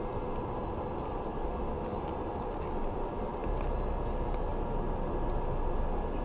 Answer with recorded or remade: recorded